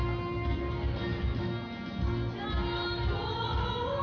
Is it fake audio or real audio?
real